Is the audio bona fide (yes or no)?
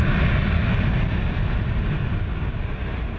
yes